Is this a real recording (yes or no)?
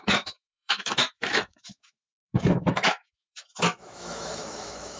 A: no